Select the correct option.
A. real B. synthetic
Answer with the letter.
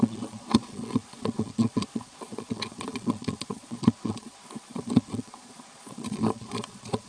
B